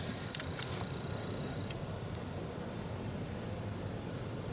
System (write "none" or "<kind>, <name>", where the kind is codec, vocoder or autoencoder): vocoder, BigVGAN v2